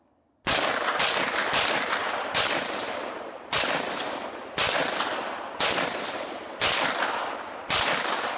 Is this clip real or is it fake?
real